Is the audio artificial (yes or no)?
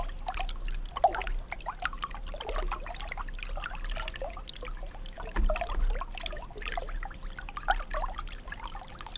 no